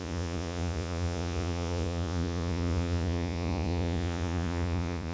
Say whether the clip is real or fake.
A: fake